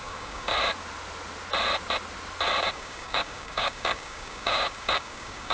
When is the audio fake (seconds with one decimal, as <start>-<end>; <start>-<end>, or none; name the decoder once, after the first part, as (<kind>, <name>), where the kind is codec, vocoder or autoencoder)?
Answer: 0.0-0.5 (codec, DAC); 2.7-5.5